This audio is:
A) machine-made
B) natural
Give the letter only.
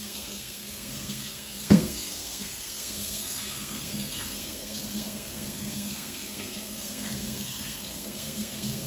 A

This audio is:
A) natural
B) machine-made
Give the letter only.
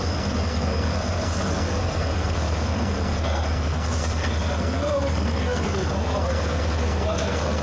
B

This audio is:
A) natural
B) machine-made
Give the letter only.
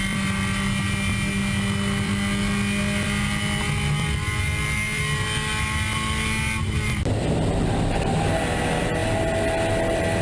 A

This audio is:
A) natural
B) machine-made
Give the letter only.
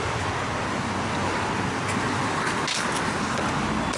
A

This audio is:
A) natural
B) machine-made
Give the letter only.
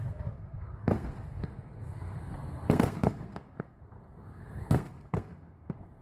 B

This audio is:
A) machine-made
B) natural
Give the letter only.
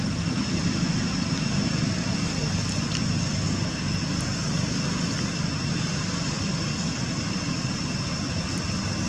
B